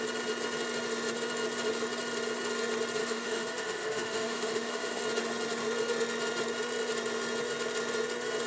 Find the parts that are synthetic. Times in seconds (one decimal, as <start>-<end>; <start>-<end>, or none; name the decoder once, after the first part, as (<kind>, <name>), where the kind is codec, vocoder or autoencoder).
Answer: 3.0-5.0 (autoencoder, DAC-VAE)